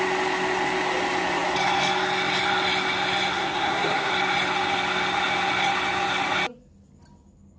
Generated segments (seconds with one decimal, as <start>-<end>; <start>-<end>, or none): 3.3-4.1